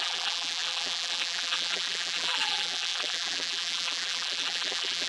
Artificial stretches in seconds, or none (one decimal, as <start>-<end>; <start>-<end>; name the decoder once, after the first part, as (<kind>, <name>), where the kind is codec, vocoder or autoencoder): 0.0-5.1 (vocoder, BigVGAN v2)